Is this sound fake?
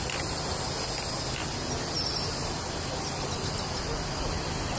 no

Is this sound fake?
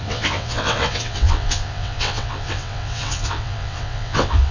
yes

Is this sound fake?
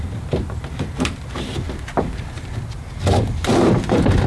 no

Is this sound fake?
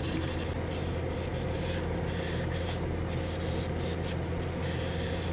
no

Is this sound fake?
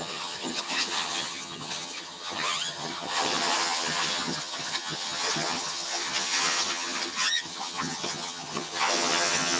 yes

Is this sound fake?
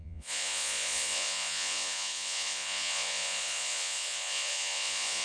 yes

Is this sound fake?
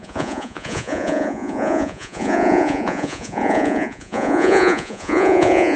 yes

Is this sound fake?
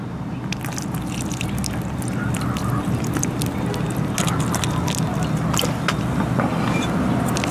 no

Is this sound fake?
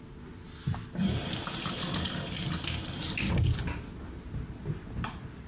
no